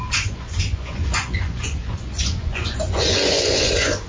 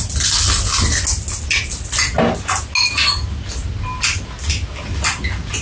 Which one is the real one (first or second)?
second